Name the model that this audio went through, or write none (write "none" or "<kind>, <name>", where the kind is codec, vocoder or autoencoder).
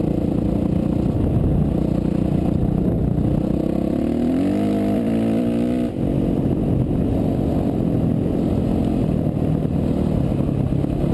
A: none